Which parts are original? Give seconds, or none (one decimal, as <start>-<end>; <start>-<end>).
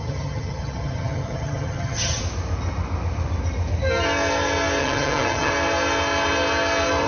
2.2-4.8; 5.5-7.1